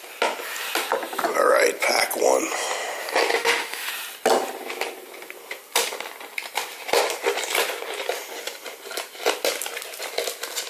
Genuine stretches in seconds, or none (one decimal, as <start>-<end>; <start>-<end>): 0.0-3.3; 3.9-10.7